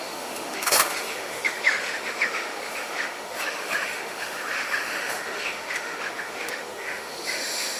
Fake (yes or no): yes